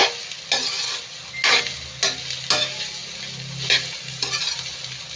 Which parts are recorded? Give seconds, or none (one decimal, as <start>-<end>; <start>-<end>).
0.0-5.2